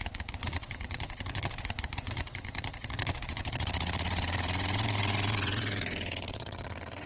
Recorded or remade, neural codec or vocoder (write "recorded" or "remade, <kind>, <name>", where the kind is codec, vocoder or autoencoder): remade, vocoder, Vocos